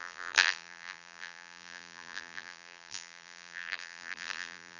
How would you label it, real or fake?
fake